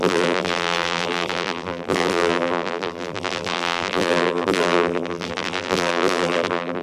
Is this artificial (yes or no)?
yes